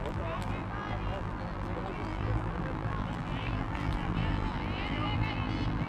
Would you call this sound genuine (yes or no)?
no